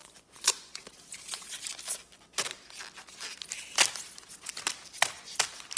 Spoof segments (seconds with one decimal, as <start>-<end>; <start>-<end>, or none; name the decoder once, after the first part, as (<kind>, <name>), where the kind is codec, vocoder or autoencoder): 0.0-0.8 (vocoder, Vocos)